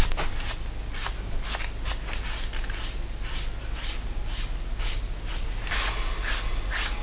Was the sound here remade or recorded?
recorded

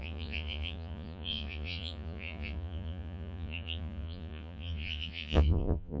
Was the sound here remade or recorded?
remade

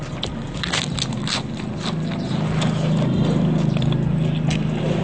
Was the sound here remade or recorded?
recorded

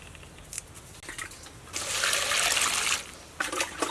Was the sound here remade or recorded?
recorded